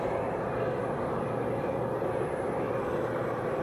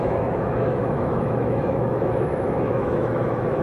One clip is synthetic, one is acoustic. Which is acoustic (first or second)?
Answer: first